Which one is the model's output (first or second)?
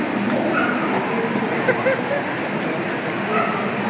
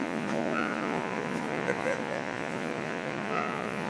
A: second